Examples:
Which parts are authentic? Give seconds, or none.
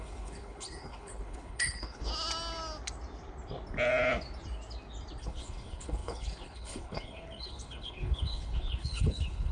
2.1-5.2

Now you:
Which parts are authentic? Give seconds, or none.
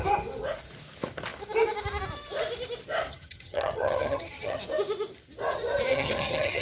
0.0-3.1; 4.6-5.9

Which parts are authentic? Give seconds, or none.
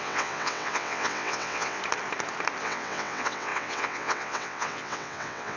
1.8-2.6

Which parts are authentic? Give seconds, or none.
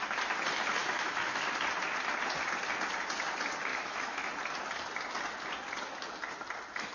0.0-0.8; 1.5-3.7; 4.3-6.9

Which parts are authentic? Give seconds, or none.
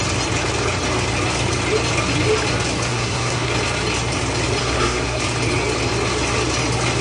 0.0-2.9; 3.5-4.6; 5.2-7.0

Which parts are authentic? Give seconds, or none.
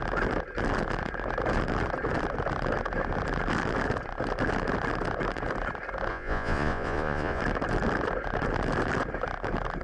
0.0-6.1; 7.4-9.8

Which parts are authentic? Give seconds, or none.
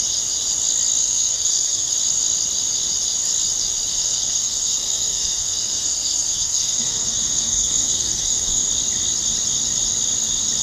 0.0-1.0; 1.9-3.9; 8.7-10.6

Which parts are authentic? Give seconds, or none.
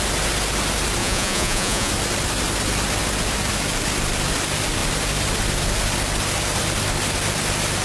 0.0-1.0; 1.9-7.8